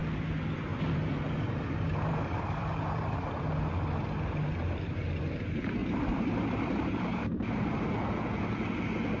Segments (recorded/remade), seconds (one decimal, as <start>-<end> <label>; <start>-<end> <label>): 0.0-0.7 recorded; 0.7-5.2 remade; 5.2-5.8 recorded; 5.8-6.4 remade; 6.4-7.1 recorded; 7.1-7.7 remade; 7.7-9.2 recorded